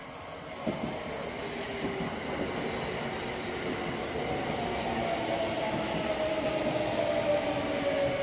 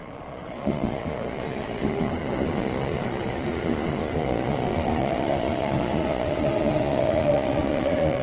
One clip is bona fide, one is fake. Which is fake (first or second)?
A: second